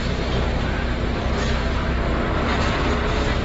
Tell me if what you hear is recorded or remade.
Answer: remade